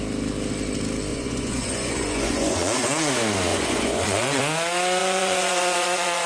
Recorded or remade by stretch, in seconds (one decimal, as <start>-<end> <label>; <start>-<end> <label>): 0.0-1.1 recorded; 1.1-3.1 remade; 3.1-3.5 recorded; 3.5-4.4 remade; 4.4-5.0 recorded; 5.0-6.3 remade